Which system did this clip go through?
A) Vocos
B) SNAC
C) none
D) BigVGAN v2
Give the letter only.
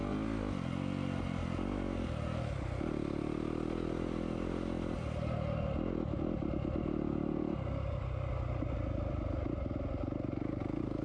C